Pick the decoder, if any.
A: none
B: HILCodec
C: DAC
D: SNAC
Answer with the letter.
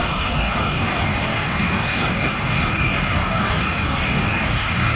C